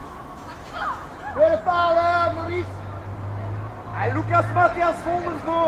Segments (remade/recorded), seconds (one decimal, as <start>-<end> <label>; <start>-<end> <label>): 0.0-1.6 remade; 1.6-2.3 recorded; 2.3-3.0 remade; 3.0-5.7 recorded